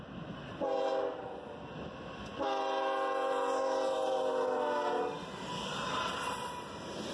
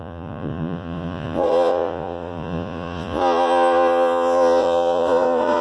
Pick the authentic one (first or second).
first